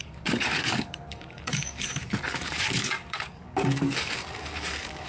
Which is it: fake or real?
fake